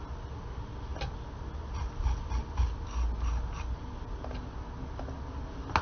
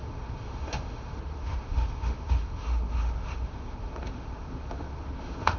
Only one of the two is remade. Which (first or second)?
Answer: second